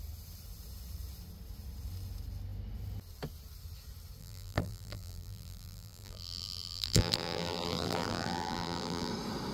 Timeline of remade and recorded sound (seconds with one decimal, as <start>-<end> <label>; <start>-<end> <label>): 0.0-4.2 recorded; 4.2-9.1 remade; 9.1-9.5 recorded